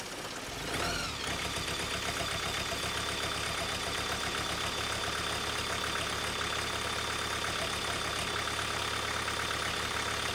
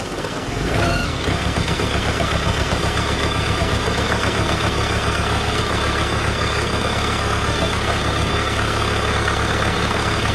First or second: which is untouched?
first